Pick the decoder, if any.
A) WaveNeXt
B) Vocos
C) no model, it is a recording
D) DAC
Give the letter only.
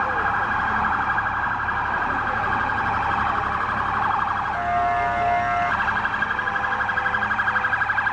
C